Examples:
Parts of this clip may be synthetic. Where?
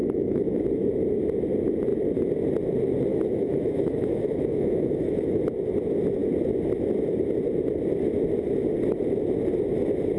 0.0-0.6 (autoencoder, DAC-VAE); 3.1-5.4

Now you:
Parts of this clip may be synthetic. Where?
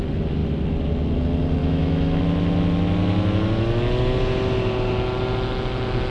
1.6-2.2 (autoencoder, DAC-VAE)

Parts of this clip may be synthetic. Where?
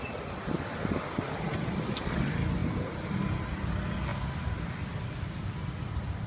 none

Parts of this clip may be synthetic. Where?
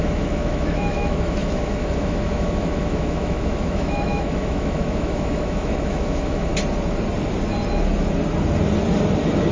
0.0-6.5 (autoencoder, DAC-VAE)